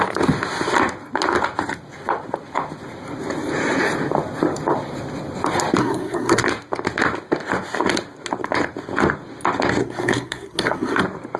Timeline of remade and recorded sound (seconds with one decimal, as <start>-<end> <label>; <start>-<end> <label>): 0.0-5.8 recorded; 5.8-6.4 remade; 6.4-9.8 recorded; 9.8-11.0 remade; 11.0-11.4 recorded